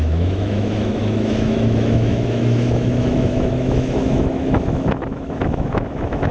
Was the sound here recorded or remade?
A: remade